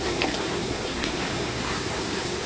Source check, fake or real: fake